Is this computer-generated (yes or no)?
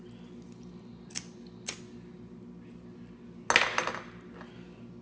no